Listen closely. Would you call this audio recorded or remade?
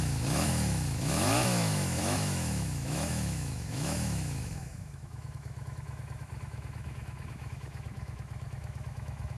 remade